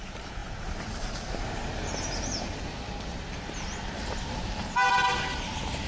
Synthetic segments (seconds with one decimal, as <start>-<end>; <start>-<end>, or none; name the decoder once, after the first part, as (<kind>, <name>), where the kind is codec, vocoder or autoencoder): 0.0-5.9 (vocoder, BigVGAN v2)